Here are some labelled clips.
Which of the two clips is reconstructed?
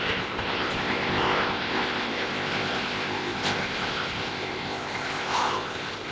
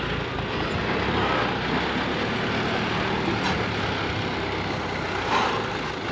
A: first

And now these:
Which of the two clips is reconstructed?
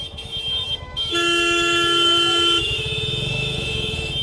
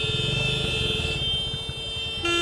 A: first